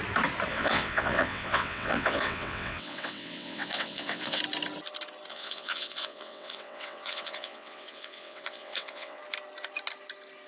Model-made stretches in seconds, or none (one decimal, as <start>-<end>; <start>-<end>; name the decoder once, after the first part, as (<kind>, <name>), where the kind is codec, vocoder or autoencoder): 0.5-4.4 (vocoder, WaveNeXt); 5.3-9.2